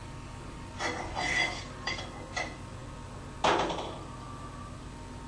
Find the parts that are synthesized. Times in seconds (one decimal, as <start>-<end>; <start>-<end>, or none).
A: 0.0-0.7; 1.3-2.0

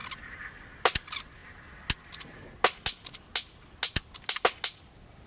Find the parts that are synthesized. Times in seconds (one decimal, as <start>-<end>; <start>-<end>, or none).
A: none

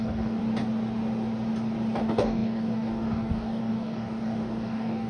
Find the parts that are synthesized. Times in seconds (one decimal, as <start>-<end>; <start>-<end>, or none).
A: 0.0-0.4; 2.0-5.1